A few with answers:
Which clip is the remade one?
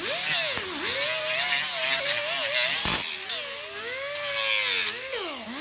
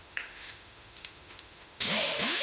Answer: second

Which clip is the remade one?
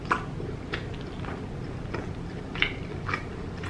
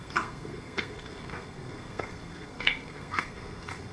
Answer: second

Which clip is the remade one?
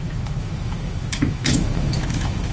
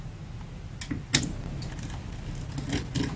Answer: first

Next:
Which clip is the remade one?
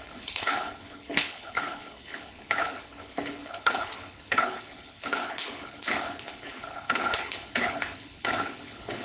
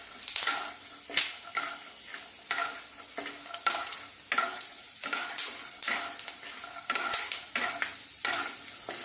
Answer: first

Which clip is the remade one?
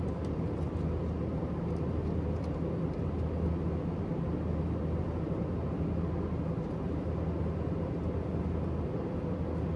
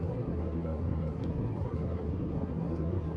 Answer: second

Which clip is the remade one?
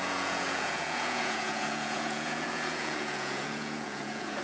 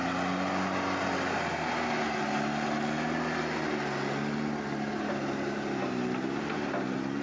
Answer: first